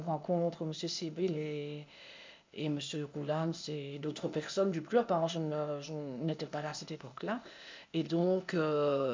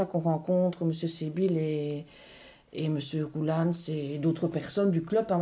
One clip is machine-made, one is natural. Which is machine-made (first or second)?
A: first